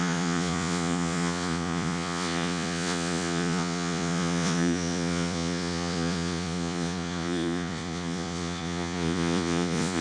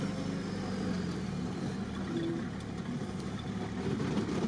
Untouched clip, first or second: second